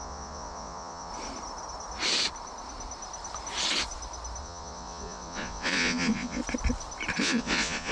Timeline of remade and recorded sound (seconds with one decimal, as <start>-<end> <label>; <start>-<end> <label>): 0.0-1.1 remade; 1.1-4.4 recorded; 4.4-6.4 remade; 6.4-7.2 recorded; 7.2-7.9 remade

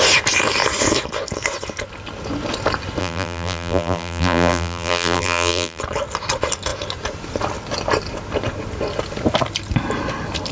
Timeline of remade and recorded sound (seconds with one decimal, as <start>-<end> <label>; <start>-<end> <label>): 0.0-3.0 recorded; 3.0-5.8 remade; 5.8-10.5 recorded

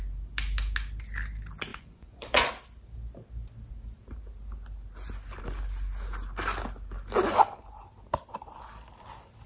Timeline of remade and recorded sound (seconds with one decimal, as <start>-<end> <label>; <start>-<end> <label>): 0.0-1.7 recorded; 1.7-2.5 remade; 2.5-9.5 recorded

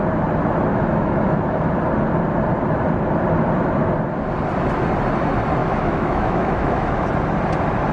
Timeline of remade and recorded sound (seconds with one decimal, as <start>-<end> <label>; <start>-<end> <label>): 0.0-0.7 recorded; 0.7-1.7 remade; 1.7-5.6 recorded; 5.6-7.1 remade; 7.1-7.9 recorded